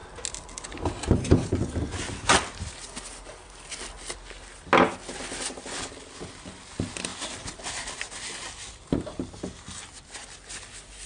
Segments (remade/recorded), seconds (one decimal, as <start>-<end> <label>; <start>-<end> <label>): 0.0-11.1 recorded